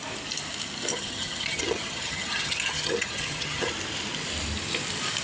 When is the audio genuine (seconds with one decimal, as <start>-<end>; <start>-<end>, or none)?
0.0-0.9; 3.7-5.2